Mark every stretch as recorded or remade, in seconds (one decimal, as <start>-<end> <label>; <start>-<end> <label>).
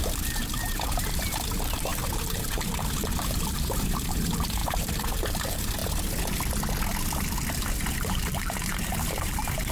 0.0-5.8 remade; 5.8-7.9 recorded; 7.9-9.7 remade